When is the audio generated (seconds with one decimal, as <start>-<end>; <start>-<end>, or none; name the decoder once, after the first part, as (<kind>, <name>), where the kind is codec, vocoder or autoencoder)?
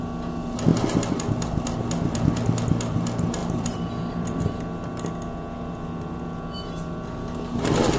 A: 3.4-4.5 (vocoder, BigVGAN v2)